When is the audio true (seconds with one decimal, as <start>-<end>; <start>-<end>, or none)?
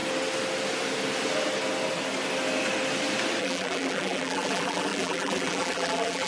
0.0-3.4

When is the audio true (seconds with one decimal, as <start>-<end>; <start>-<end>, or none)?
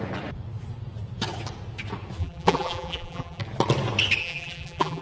0.0-2.2; 3.4-4.2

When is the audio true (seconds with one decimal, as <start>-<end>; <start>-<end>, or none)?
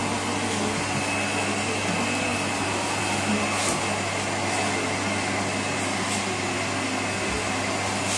0.0-2.3; 3.0-8.2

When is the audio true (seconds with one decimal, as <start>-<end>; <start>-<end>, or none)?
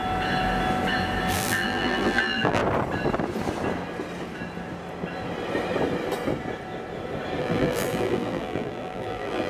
0.0-1.3; 2.6-7.4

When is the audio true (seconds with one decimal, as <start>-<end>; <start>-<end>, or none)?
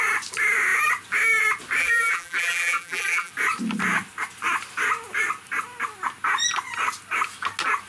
0.0-1.8; 3.3-7.9